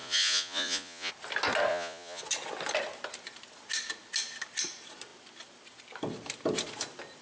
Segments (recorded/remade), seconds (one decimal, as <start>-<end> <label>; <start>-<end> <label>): 0.0-1.1 remade; 1.1-1.7 recorded; 1.7-2.2 remade; 2.2-7.2 recorded